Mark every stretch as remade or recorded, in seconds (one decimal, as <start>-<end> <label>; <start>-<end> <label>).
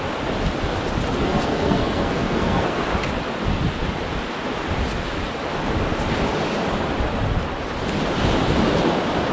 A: 0.0-1.2 recorded; 1.2-2.8 remade; 2.8-9.3 recorded